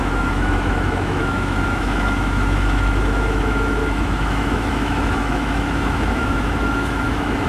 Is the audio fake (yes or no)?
yes